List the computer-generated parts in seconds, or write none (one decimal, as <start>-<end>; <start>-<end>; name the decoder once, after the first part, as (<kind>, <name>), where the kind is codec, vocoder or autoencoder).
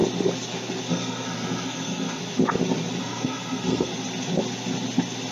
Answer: 0.9-2.2 (codec, SNAC); 3.0-3.9